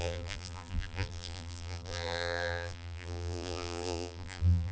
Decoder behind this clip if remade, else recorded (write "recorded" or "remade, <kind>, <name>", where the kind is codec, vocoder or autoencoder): remade, vocoder, BigVGAN v2